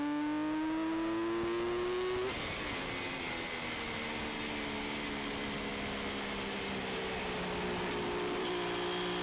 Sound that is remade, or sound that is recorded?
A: recorded